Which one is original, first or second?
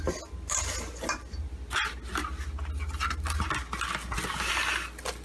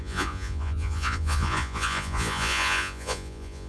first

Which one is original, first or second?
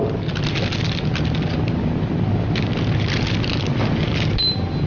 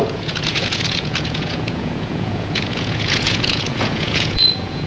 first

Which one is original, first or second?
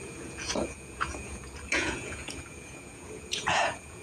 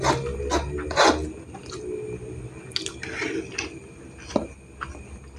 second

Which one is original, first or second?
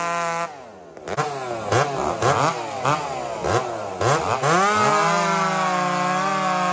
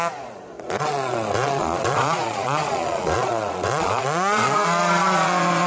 first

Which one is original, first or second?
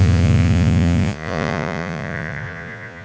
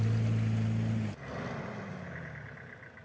second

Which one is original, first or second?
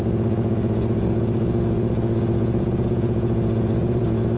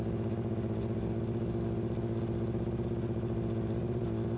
second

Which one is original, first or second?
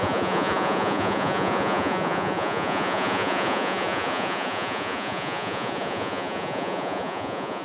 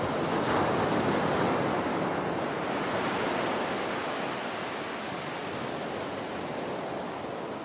second